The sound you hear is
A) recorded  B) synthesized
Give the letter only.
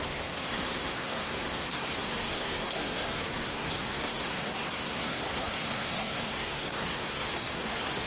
B